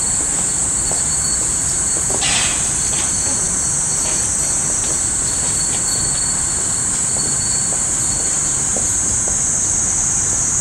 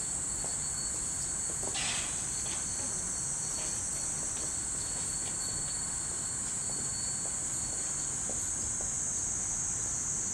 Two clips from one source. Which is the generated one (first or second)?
first